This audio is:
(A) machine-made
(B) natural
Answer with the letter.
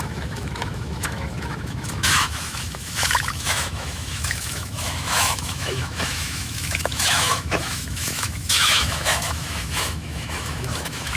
A